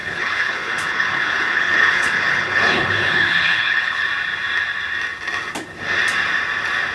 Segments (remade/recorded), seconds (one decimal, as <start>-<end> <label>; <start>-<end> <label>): 0.0-4.1 remade; 4.1-6.9 recorded